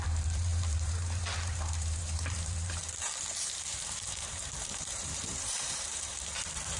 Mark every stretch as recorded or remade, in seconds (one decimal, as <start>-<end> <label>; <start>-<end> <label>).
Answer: 0.0-2.8 remade; 2.8-3.4 recorded; 3.4-6.8 remade